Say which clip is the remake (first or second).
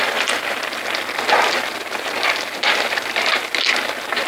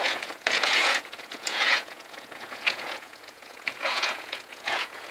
second